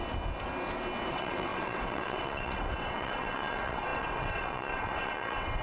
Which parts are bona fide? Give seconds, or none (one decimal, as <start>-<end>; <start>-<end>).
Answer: 0.0-1.1